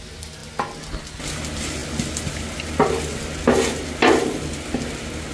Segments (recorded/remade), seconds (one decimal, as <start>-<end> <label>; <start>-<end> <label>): 0.0-5.3 recorded